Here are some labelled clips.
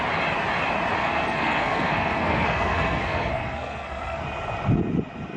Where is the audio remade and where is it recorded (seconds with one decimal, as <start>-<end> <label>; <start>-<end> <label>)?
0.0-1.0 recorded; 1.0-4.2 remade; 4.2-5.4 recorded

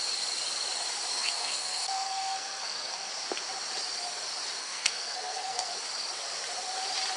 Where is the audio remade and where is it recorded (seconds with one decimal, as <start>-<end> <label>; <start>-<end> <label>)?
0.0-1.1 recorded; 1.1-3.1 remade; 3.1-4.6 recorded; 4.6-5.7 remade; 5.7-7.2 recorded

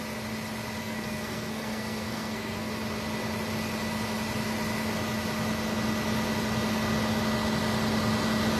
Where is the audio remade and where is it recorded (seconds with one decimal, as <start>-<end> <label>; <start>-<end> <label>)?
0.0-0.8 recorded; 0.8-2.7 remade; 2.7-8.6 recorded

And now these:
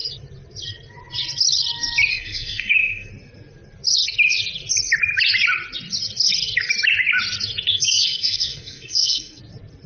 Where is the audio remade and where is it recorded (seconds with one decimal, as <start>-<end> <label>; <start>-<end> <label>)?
0.0-2.1 recorded; 2.1-3.1 remade; 3.1-7.7 recorded; 7.7-9.4 remade; 9.4-9.9 recorded

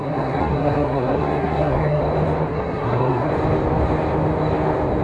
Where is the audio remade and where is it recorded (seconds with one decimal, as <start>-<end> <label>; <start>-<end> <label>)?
0.0-2.0 remade; 2.0-2.5 recorded; 2.5-3.3 remade; 3.3-5.0 recorded

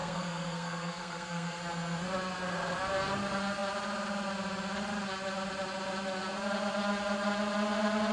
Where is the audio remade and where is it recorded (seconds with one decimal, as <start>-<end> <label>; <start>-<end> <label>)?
0.0-1.6 remade; 1.6-8.1 recorded

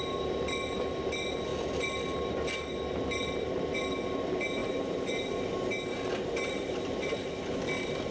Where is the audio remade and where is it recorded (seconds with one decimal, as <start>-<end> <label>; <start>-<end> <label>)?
0.0-8.1 recorded